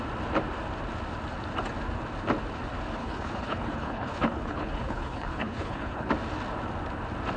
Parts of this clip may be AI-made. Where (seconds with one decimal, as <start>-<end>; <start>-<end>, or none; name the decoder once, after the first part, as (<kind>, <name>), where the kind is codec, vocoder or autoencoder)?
3.0-6.1 (codec, HILCodec)